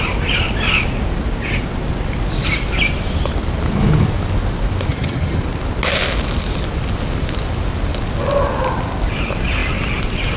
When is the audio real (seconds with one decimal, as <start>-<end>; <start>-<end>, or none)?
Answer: 0.0-4.9; 5.4-10.4